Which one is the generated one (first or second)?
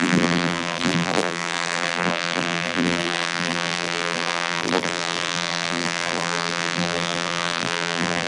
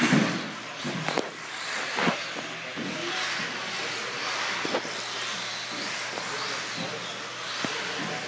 first